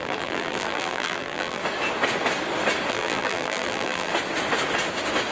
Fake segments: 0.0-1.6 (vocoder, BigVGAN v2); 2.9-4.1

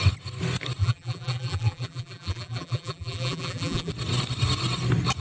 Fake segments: 0.8-3.9 (vocoder, BigVGAN v2)

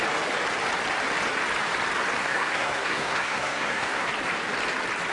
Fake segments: 2.2-4.1 (codec, SNAC)